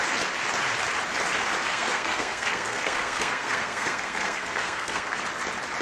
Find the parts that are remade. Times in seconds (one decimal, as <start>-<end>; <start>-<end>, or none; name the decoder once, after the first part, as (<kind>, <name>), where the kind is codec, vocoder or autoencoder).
1.7-5.2 (codec, SNAC)